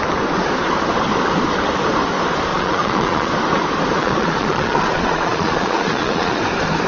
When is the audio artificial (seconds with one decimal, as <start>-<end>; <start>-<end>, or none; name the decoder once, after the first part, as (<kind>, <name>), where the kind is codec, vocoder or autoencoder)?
2.5-3.3 (vocoder, Vocos); 4.0-6.4